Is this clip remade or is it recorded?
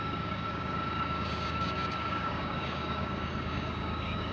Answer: remade